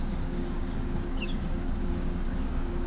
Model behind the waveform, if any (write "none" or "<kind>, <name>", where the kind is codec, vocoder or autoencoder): codec, DAC